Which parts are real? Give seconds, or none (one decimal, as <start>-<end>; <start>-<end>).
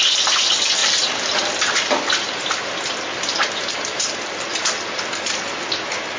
0.0-6.2